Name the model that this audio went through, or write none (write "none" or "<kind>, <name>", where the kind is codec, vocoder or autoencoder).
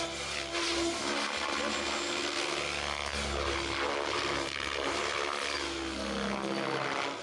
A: none